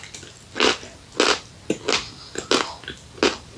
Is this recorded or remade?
recorded